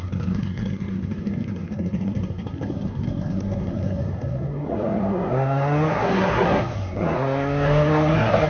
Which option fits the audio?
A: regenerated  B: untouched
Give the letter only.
A